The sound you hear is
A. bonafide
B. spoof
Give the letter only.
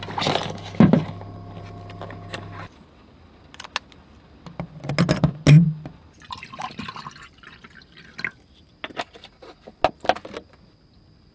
A